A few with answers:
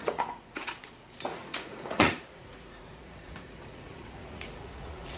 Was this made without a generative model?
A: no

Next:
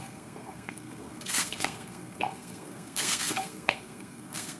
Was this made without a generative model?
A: no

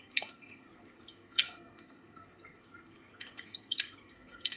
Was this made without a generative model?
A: no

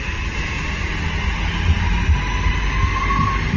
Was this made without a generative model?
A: yes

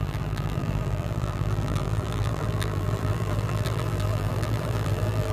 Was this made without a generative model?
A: no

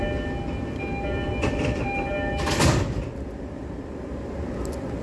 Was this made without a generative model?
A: yes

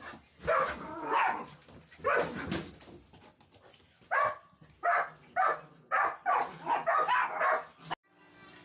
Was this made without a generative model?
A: yes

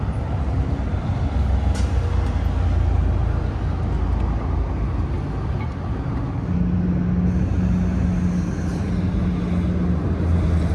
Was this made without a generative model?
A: yes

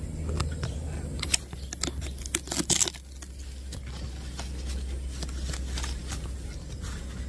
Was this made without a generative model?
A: yes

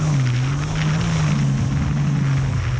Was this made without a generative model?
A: yes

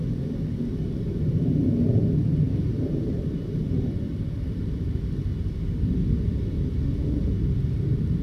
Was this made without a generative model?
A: yes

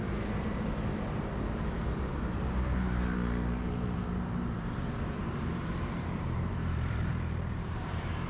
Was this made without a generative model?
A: no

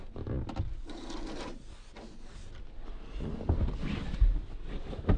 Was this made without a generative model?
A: yes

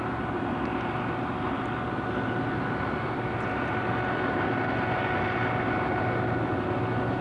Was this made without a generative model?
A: yes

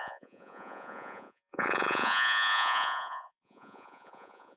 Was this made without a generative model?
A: no